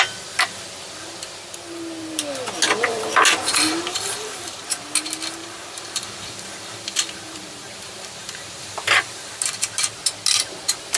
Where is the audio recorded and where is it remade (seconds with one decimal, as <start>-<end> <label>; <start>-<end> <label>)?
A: 0.0-3.9 recorded; 3.9-4.6 remade; 4.6-5.4 recorded; 5.4-9.4 remade; 9.4-11.0 recorded